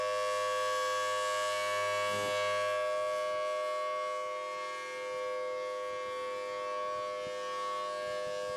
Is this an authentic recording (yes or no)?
yes